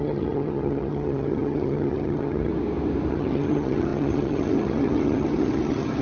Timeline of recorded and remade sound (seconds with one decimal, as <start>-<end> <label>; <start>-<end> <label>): 0.0-2.5 remade; 2.5-3.1 recorded; 3.1-6.0 remade